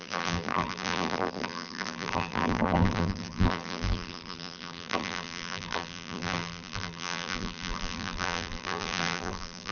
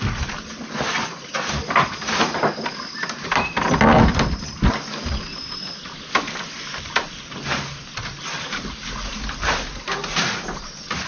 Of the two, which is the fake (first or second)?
first